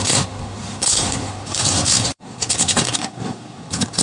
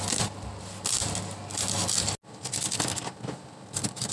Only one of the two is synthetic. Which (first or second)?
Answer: first